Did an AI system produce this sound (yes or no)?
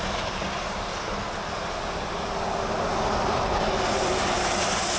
no